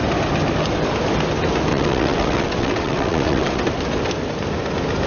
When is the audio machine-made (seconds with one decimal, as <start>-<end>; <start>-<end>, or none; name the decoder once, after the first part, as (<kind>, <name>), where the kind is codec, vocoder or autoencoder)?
1.7-3.6 (vocoder, WaveNeXt)